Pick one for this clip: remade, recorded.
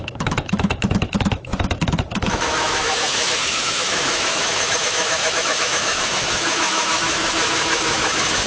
remade